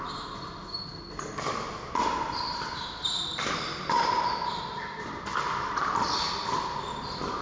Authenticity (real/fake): real